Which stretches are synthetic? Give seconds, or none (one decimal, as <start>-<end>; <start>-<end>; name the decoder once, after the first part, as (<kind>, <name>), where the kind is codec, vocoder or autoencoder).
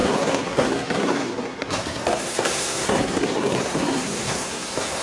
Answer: 0.0-5.0 (codec, SNAC)